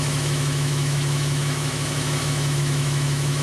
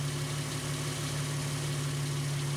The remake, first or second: first